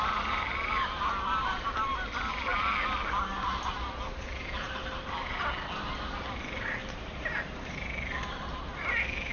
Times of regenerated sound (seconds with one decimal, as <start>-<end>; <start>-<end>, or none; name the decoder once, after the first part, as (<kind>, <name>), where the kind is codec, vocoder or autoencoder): none